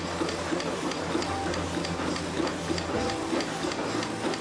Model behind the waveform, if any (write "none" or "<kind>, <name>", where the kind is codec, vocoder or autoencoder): none